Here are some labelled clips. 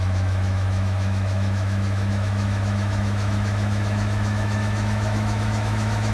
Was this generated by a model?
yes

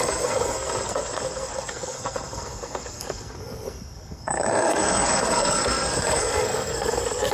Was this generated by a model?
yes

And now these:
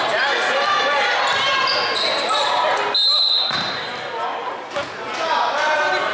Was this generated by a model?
no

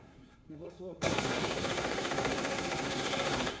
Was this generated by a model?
yes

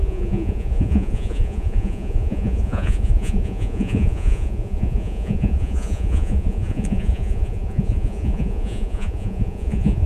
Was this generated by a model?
yes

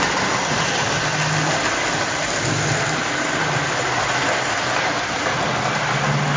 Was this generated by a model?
no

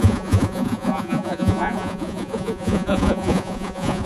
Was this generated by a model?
yes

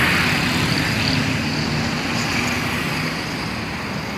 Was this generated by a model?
no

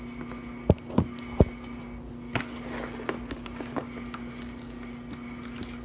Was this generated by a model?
no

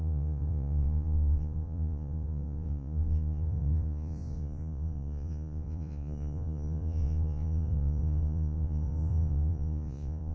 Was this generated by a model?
yes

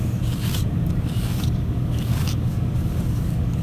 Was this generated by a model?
yes